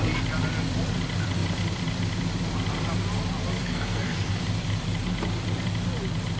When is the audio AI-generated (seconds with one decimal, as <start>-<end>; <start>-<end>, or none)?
3.6-4.4